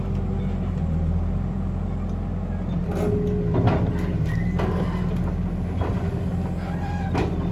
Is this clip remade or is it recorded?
recorded